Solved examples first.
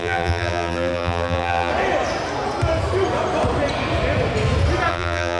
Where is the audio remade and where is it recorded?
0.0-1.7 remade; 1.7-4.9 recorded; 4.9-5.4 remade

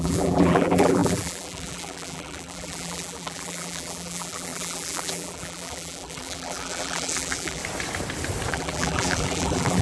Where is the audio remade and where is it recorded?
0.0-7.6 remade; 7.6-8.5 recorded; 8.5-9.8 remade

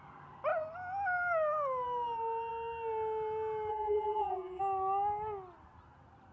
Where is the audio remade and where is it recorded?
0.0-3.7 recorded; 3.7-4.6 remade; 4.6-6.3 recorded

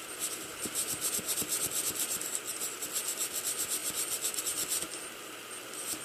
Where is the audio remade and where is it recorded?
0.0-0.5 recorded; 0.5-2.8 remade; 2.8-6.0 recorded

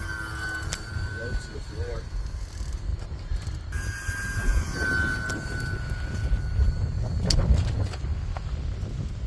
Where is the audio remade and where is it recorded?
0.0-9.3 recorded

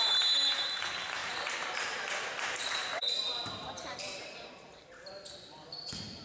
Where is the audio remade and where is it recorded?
0.0-1.2 recorded; 1.2-4.9 remade; 4.9-6.2 recorded

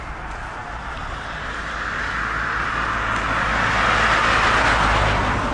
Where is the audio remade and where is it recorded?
0.0-0.6 recorded; 0.6-3.5 remade; 3.5-5.5 recorded